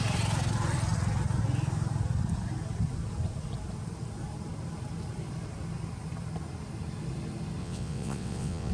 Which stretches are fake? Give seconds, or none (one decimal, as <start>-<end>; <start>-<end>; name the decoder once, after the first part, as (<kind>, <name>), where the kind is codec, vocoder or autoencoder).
7.6-8.7 (vocoder, WaveNeXt)

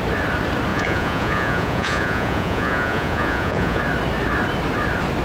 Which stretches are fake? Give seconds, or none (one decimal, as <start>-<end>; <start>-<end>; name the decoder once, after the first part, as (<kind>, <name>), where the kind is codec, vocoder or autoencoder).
0.7-3.8 (vocoder, Vocos)

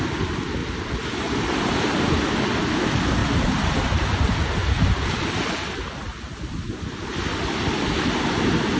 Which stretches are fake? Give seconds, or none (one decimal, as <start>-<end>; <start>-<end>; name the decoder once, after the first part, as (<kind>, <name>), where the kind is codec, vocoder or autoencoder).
0.6-2.0 (vocoder, BigVGAN v2); 3.2-6.4

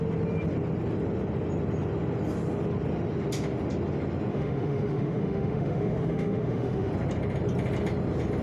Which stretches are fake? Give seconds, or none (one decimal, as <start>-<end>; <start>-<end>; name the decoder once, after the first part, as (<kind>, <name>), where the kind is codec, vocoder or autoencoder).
4.3-6.9 (autoencoder, DAC-VAE)

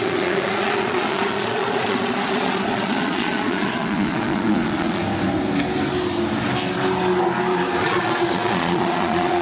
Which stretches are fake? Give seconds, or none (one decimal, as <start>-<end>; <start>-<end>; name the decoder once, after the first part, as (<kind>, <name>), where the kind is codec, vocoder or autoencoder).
0.0-5.0 (vocoder, Vocos); 7.8-9.4